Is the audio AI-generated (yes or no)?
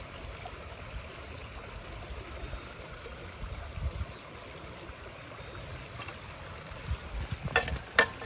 no